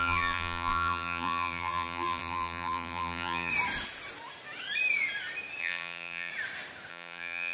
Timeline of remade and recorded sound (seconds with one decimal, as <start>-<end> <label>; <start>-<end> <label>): 0.0-3.5 remade; 3.5-5.6 recorded; 5.6-6.3 remade; 6.3-6.9 recorded; 6.9-7.5 remade